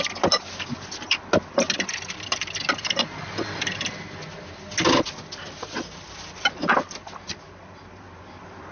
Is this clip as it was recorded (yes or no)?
yes